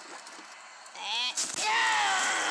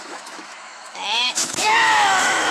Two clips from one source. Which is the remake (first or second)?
second